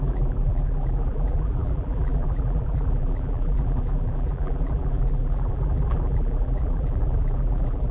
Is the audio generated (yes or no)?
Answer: yes